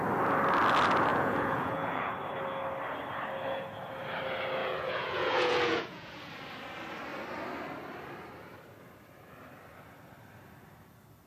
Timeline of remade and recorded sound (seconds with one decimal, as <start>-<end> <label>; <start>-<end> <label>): 0.0-1.1 recorded; 1.1-2.1 remade; 2.1-4.6 recorded; 4.6-6.3 remade; 6.3-11.3 recorded